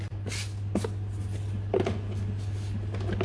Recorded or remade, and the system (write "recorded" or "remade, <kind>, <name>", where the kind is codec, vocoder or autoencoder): recorded